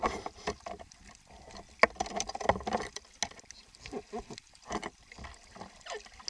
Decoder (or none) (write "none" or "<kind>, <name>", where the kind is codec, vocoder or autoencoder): none